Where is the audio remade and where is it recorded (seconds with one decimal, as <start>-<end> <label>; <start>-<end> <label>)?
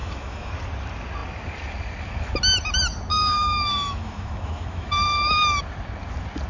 0.0-0.5 remade; 0.5-3.1 recorded; 3.1-5.6 remade; 5.6-6.5 recorded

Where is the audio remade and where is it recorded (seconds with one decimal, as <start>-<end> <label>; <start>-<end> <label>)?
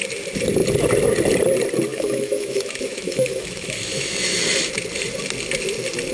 0.0-1.9 recorded; 1.9-4.4 remade; 4.4-6.1 recorded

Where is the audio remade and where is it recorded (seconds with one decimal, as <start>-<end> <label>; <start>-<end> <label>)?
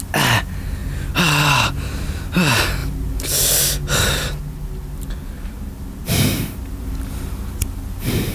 0.0-8.3 recorded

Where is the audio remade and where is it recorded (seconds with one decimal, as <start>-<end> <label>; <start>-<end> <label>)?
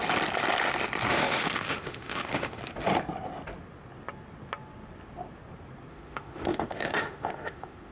0.0-1.1 recorded; 1.1-2.6 remade; 2.6-5.9 recorded; 5.9-7.9 remade